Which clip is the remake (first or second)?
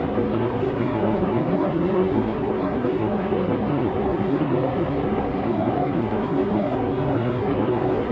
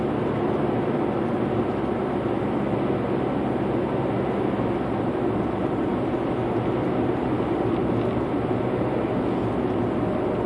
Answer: first